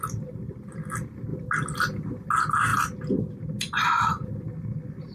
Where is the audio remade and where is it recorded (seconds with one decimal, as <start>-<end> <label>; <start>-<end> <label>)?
0.0-1.3 recorded; 1.3-2.3 remade; 2.3-2.7 recorded; 2.7-3.3 remade; 3.3-5.1 recorded